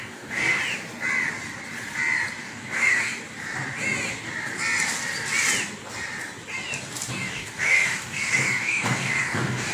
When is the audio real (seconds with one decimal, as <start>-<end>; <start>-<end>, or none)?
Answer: 0.6-2.4; 3.1-7.1